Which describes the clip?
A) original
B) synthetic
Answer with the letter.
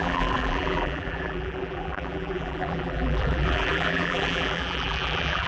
B